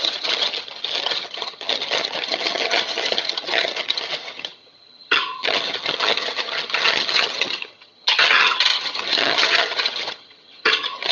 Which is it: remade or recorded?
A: remade